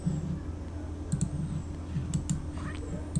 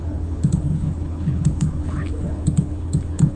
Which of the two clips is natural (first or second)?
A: first